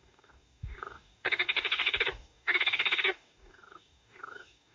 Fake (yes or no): yes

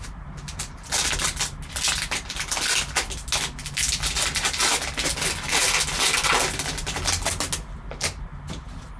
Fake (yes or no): no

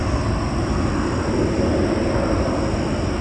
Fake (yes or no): no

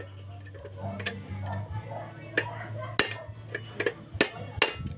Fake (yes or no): no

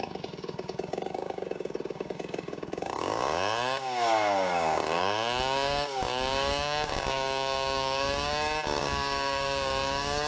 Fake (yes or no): yes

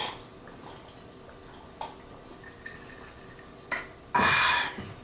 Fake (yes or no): no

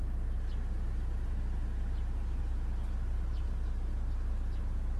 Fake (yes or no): no